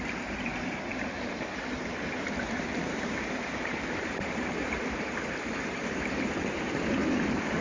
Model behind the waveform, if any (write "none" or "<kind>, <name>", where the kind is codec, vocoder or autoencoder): vocoder, BigVGAN v2